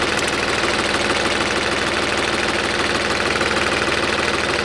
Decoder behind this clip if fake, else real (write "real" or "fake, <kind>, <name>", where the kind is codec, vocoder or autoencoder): real